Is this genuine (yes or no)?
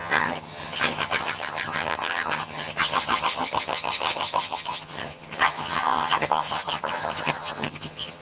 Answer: no